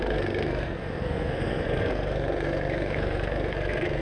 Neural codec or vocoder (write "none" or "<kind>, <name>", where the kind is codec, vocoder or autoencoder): codec, SNAC